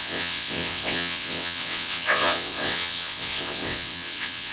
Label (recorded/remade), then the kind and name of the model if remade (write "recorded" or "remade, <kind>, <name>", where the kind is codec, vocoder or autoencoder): remade, vocoder, WaveNeXt